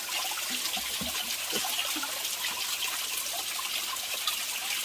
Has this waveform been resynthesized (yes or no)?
no